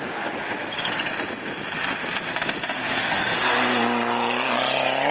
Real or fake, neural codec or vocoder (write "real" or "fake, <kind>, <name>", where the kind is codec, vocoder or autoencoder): real